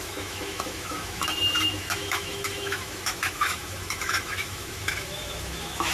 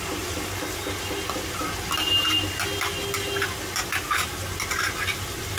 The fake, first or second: first